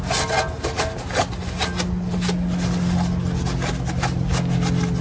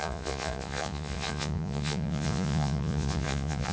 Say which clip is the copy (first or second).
second